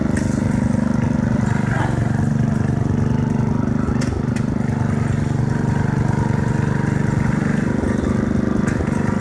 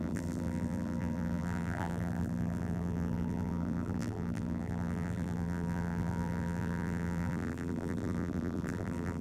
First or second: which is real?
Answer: first